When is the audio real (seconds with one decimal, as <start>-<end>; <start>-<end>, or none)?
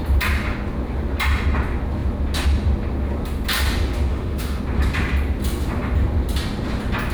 0.0-4.1; 4.6-7.1